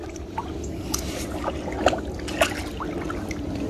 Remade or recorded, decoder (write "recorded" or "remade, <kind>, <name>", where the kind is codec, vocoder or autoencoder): recorded